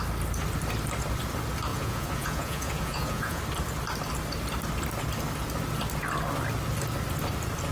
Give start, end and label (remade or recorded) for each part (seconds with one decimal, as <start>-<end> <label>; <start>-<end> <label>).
0.0-1.7 recorded; 1.7-3.4 remade; 3.4-7.7 recorded